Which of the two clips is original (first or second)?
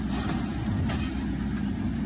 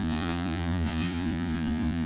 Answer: first